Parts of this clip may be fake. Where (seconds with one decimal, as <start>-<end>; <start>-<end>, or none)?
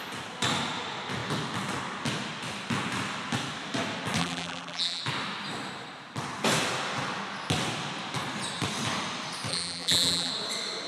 4.2-5.0; 9.5-10.3